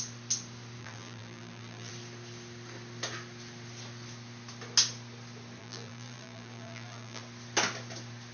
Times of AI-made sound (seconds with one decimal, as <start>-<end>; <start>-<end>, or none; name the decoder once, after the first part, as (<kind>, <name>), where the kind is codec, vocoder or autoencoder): 0.8-1.9 (vocoder, BigVGAN v2); 5.6-7.2